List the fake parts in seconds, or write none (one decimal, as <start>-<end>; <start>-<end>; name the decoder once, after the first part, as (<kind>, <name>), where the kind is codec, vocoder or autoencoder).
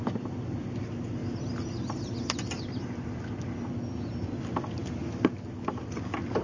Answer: none